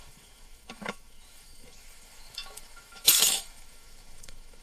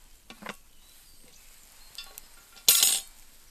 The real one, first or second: second